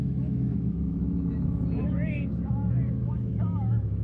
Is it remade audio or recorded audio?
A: remade